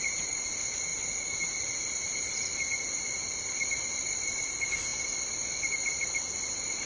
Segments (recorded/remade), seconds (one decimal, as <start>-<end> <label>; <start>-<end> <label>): 0.0-6.9 recorded